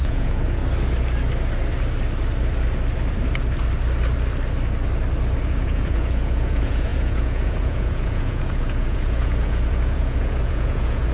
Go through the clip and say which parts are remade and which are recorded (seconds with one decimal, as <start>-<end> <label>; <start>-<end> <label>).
0.0-0.6 remade; 0.6-5.4 recorded; 5.4-11.1 remade